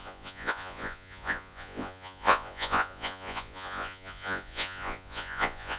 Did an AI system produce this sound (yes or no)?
yes